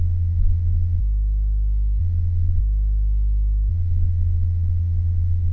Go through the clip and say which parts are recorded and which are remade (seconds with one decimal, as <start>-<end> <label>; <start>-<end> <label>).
0.0-1.0 remade; 1.0-2.0 recorded; 2.0-2.6 remade; 2.6-3.7 recorded; 3.7-5.5 remade